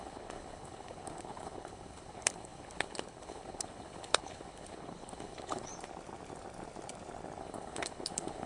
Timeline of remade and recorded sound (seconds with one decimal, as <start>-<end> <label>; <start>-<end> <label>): 0.0-5.7 remade; 5.7-7.4 recorded; 7.4-8.5 remade